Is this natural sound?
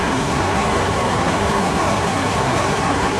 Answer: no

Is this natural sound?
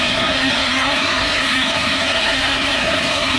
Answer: no